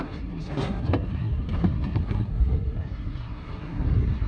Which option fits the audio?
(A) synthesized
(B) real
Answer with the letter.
A